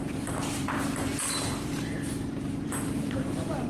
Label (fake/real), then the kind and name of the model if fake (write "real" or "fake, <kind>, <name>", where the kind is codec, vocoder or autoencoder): fake, vocoder, BigVGAN v2